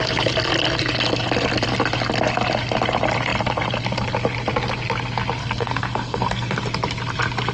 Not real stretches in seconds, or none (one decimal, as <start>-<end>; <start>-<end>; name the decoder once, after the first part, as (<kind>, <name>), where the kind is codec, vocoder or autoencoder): 5.4-6.6 (codec, SNAC)